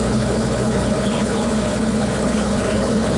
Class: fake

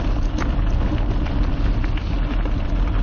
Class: real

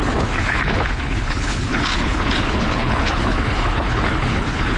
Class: fake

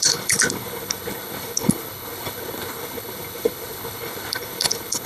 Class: fake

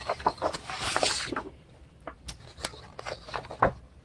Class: real